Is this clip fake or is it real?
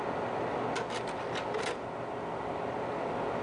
real